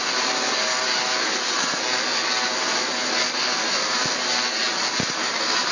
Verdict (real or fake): real